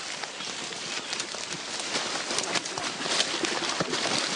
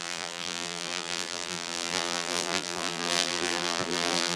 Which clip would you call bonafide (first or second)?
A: first